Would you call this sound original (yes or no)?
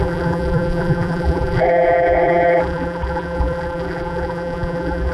no